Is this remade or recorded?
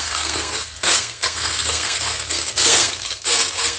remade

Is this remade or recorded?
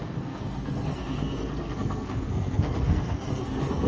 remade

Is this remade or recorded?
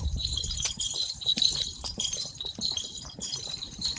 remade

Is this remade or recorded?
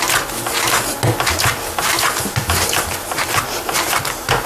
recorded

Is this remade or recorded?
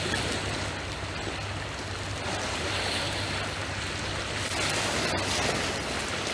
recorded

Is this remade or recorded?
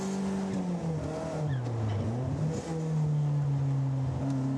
recorded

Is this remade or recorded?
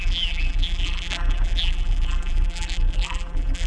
remade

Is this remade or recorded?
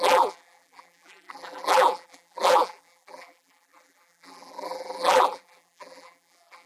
remade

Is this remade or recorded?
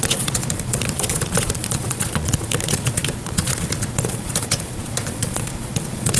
remade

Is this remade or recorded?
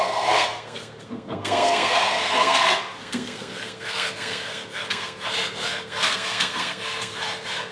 remade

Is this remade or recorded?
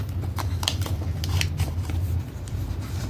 remade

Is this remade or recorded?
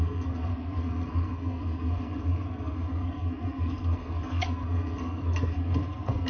remade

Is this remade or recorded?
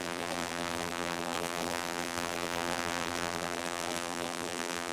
remade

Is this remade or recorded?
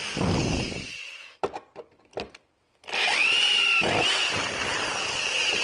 recorded